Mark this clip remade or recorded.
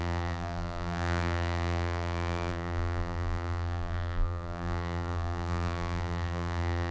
remade